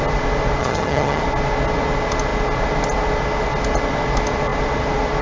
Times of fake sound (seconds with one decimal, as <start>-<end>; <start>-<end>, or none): 0.6-1.2